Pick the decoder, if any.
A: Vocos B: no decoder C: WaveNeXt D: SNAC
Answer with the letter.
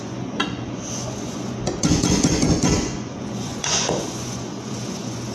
A